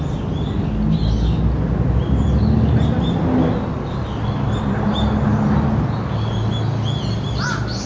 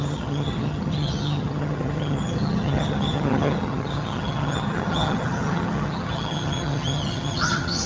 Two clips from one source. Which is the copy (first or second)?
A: second